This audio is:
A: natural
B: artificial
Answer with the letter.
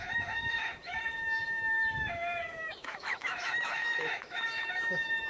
B